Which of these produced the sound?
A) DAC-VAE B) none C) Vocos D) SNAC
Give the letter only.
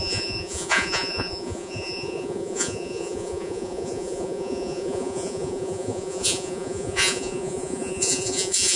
C